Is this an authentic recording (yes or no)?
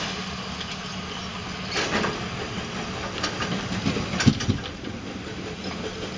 yes